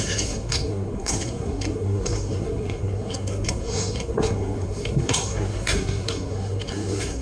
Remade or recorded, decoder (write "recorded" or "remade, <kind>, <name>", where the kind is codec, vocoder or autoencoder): remade, codec, SNAC